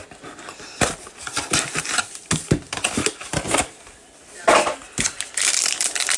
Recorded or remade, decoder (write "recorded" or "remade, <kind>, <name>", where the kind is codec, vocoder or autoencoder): recorded